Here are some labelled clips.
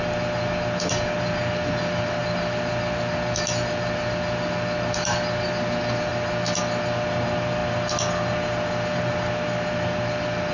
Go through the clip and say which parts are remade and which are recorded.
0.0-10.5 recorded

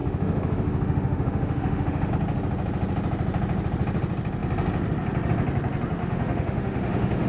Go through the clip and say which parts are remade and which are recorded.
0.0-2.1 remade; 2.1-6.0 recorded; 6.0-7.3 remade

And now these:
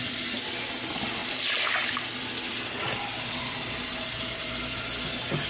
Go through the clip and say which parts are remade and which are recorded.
0.0-5.5 recorded

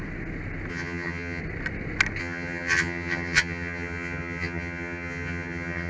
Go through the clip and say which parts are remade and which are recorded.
0.0-0.7 recorded; 0.7-1.4 remade; 1.4-2.2 recorded; 2.2-5.9 remade

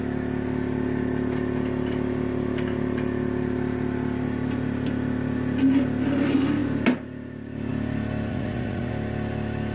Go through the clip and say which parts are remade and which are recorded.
0.0-8.3 recorded; 8.3-8.9 remade; 8.9-9.7 recorded

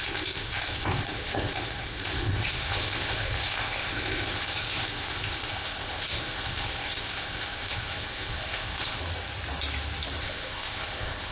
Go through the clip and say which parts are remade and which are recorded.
0.0-9.0 remade; 9.0-10.2 recorded; 10.2-11.3 remade